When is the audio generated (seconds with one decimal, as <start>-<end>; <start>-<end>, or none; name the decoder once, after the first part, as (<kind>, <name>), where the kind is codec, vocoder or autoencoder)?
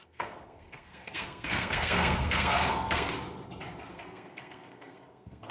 0.0-3.1 (codec, SNAC); 3.9-5.5